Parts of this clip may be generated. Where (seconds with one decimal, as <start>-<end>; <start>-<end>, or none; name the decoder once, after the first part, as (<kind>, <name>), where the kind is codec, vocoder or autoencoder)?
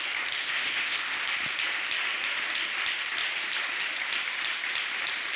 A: 0.4-1.2 (codec, ZipCodec)